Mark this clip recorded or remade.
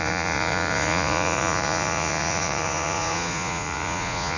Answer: remade